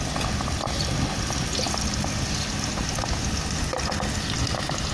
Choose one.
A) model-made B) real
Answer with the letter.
B